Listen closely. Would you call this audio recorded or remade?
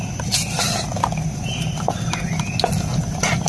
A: recorded